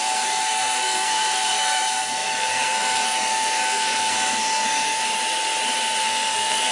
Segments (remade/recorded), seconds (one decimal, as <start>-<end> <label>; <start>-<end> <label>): 0.0-5.0 remade; 5.0-6.0 recorded; 6.0-6.7 remade